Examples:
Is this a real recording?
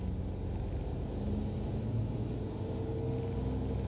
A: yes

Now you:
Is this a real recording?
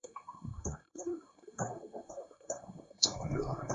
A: no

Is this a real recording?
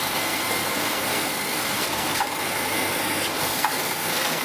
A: no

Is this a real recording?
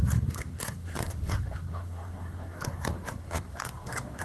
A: no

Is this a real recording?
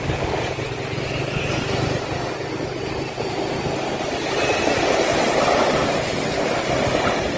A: yes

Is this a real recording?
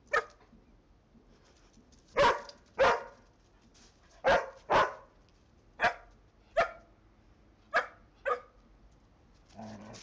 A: yes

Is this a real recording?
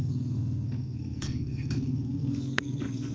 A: no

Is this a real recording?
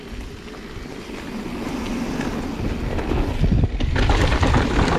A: yes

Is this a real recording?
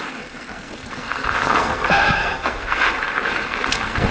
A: no